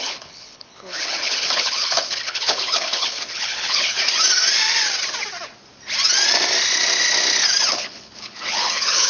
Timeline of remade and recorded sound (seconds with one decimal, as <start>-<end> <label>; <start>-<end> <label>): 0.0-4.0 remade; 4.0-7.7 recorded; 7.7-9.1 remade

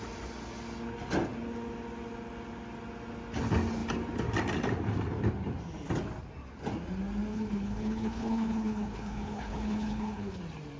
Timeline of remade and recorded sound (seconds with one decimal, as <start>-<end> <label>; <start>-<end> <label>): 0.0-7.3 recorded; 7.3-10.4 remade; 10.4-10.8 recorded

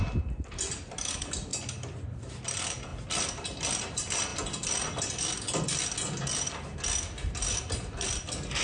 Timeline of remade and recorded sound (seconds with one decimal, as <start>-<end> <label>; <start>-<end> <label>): 0.0-8.6 recorded

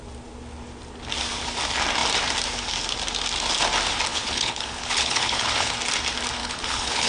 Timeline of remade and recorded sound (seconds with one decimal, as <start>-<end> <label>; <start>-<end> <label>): 0.0-4.1 recorded; 4.1-5.7 remade; 5.7-6.4 recorded; 6.4-7.1 remade

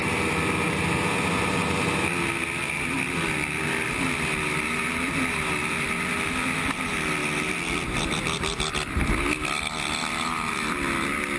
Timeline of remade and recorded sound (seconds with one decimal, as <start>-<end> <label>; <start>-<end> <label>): 0.0-11.4 recorded

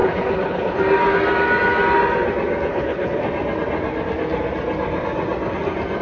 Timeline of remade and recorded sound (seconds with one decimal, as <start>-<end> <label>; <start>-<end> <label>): 0.0-0.8 remade; 0.8-2.7 recorded; 2.7-3.2 remade; 3.2-6.0 recorded

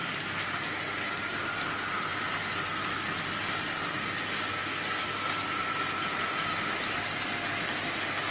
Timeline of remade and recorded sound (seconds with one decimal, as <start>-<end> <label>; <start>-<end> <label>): 0.0-8.3 recorded

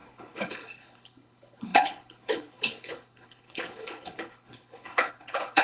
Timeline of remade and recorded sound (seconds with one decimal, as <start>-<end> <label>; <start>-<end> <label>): 0.0-5.6 remade